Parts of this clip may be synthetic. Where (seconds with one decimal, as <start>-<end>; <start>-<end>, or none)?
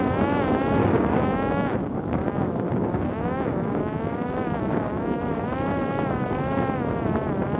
0.8-5.2